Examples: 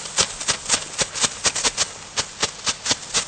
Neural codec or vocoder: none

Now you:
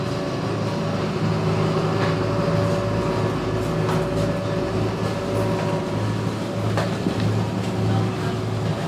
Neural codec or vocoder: none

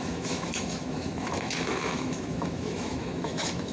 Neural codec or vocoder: autoencoder, DAC-VAE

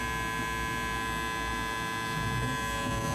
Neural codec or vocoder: none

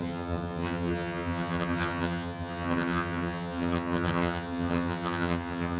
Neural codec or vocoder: vocoder, HiFi-GAN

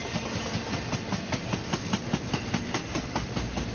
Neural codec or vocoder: none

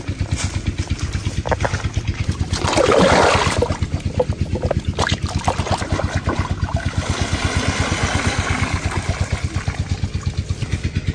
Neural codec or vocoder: none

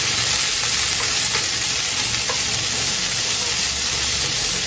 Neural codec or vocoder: none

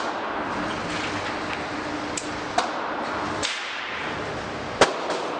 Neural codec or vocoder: none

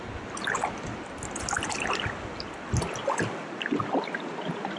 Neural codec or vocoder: none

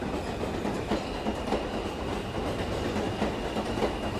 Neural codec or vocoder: none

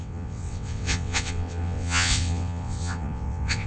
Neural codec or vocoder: vocoder, WaveNeXt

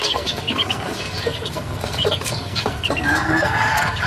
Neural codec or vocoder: codec, SNAC